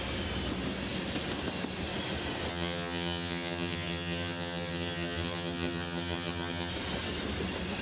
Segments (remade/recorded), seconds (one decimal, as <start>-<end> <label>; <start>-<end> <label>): 0.0-2.5 recorded; 2.5-6.7 remade; 6.7-7.8 recorded

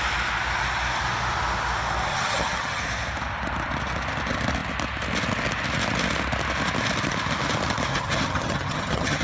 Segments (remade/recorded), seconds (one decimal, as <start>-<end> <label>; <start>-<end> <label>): 0.0-2.1 recorded; 2.1-2.8 remade; 2.8-7.9 recorded; 7.9-9.2 remade

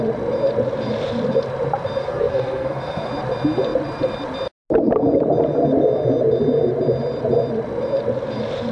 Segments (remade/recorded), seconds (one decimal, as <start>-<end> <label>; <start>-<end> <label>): 0.0-2.0 recorded; 2.0-3.1 remade; 3.1-8.7 recorded

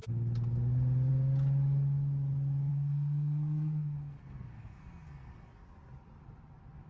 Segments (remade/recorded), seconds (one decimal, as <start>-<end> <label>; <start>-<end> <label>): 0.0-2.7 recorded; 2.7-5.5 remade; 5.5-6.9 recorded

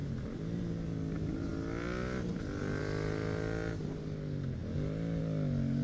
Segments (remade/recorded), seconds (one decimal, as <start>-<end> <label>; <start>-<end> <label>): 0.0-5.8 recorded